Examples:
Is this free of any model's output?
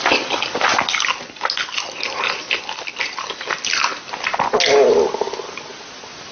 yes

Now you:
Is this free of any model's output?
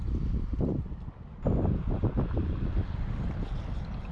yes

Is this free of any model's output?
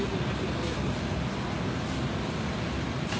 yes